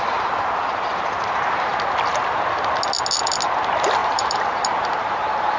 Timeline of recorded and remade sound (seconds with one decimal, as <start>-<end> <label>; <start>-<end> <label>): 0.0-4.0 recorded; 4.0-5.6 remade